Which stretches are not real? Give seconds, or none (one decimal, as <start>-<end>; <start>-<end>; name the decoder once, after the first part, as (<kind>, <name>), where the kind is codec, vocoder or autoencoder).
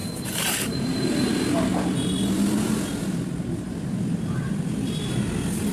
0.0-1.3 (vocoder, BigVGAN v2); 3.0-4.6